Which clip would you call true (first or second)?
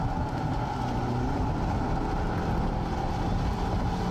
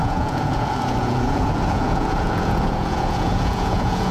first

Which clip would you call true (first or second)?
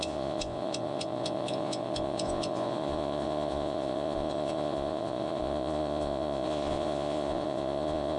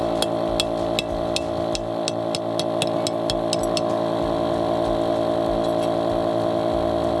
second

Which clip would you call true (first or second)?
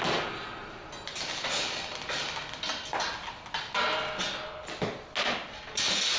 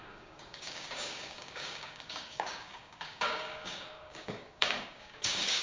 first